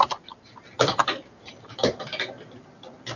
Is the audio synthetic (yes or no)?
no